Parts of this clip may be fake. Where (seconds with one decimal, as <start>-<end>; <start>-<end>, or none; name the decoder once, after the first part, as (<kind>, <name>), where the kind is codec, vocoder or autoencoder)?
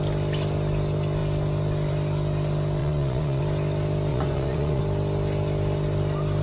2.8-3.4 (vocoder, Vocos); 4.1-4.8